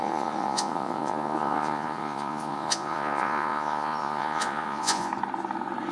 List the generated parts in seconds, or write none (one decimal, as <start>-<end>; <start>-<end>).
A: 0.0-5.1

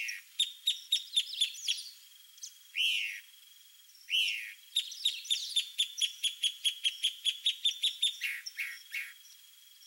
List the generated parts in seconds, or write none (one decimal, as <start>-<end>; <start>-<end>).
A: 5.4-9.1

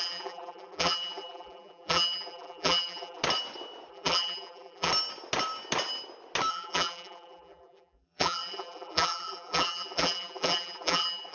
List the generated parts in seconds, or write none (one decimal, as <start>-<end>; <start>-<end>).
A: 0.0-3.2; 3.9-4.9; 6.5-11.3

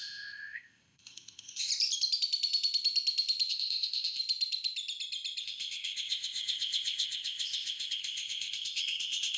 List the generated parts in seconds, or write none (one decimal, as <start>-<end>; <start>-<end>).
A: 0.0-1.7; 3.5-4.2; 5.4-9.4